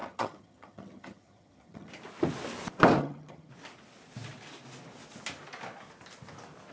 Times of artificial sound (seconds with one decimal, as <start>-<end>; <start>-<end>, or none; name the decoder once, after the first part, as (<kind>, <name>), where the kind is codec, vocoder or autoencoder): 0.0-1.9 (vocoder, HiFi-GAN); 3.0-3.5